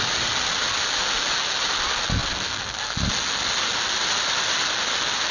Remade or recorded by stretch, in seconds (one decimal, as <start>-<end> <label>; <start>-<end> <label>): 0.0-5.3 recorded